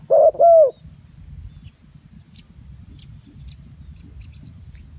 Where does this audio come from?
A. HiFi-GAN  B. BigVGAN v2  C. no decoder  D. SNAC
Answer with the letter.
C